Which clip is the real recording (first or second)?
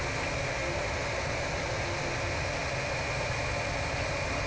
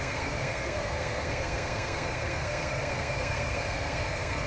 first